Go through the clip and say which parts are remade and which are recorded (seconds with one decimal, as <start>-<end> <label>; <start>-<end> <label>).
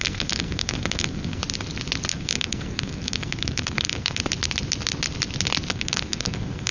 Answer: 0.0-1.4 remade; 1.4-2.1 recorded; 2.1-4.2 remade; 4.2-5.7 recorded; 5.7-6.7 remade